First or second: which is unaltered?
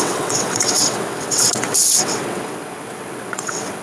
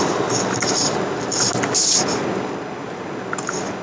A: second